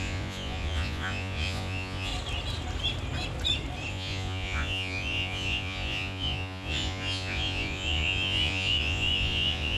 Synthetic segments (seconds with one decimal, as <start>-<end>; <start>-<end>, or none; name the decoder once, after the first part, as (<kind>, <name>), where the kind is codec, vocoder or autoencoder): 0.0-2.1 (vocoder, Vocos); 3.9-9.8